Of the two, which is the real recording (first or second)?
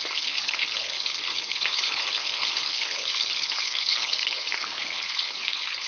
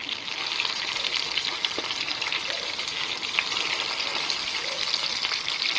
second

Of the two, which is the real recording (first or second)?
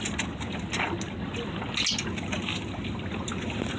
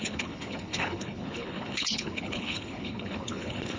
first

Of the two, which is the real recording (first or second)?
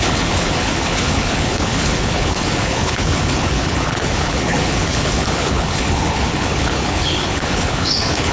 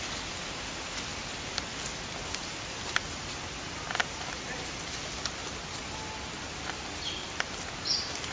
second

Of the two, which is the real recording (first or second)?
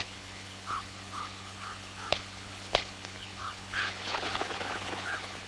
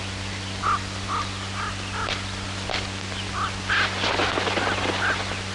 second